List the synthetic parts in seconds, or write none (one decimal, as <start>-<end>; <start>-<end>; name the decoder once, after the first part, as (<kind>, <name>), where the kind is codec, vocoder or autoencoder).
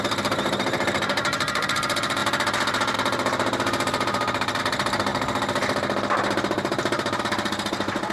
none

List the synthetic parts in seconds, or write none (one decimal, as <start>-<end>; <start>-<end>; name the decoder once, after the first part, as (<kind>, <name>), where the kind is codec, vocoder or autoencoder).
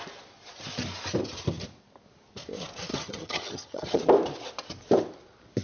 2.9-4.0 (vocoder, HiFi-GAN)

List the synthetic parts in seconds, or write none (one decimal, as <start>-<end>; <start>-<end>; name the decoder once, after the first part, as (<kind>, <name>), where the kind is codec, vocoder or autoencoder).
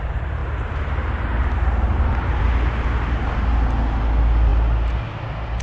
none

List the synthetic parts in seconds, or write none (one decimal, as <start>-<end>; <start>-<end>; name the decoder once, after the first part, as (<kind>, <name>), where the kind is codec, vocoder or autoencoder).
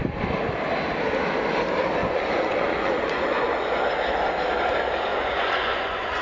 2.0-3.9 (vocoder, Vocos); 5.1-6.2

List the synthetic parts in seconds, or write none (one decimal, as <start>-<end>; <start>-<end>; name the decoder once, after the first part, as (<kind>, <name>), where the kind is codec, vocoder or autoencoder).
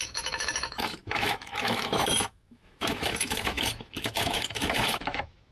0.0-5.5 (autoencoder, DAC-VAE)